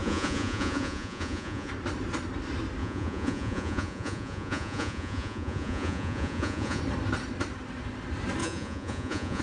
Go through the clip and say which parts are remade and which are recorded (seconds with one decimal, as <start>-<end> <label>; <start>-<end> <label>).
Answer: 0.0-1.7 remade; 1.7-2.8 recorded; 2.8-6.8 remade; 6.8-8.4 recorded; 8.4-9.4 remade